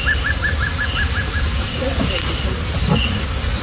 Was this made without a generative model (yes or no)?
yes